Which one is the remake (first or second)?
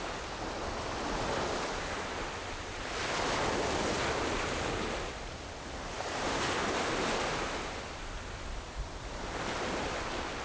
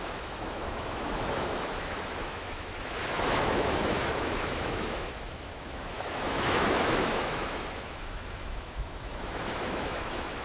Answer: second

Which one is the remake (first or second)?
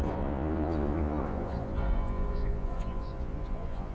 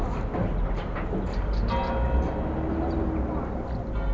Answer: first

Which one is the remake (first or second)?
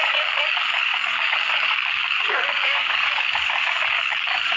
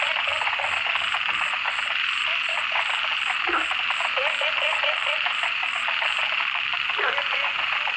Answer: first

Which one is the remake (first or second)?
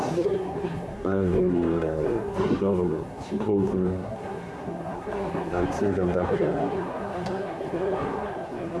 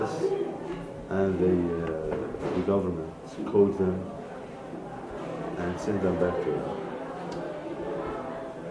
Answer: first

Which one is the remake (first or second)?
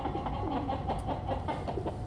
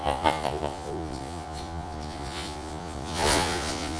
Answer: second